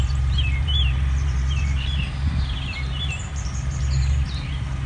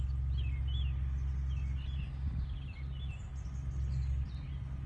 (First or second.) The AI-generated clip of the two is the first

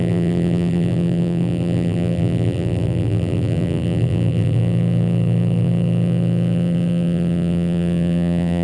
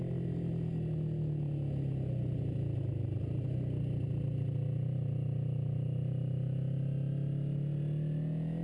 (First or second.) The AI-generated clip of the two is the first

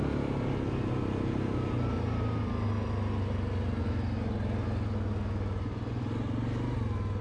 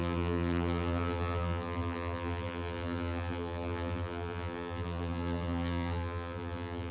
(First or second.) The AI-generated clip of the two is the second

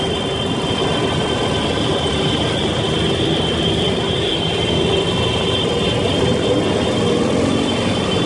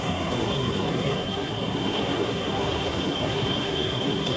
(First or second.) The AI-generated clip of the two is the second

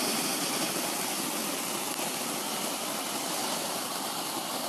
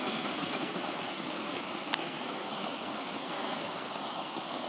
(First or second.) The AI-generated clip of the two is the second